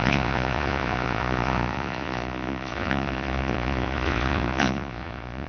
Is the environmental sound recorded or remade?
remade